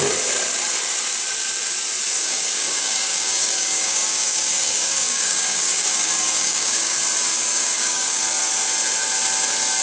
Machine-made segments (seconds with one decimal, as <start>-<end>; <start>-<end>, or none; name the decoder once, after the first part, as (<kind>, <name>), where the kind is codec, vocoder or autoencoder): 2.1-7.0 (codec, DAC); 7.4-8.2